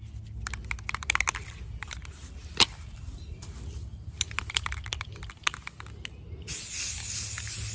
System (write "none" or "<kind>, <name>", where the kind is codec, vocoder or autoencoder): none